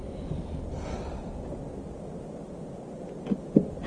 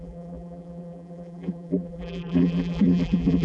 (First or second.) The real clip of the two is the first